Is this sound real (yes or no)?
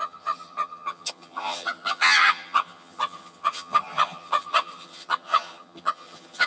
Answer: no